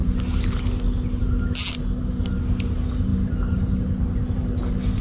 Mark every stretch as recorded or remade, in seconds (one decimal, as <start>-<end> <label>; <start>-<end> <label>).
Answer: 0.0-5.0 recorded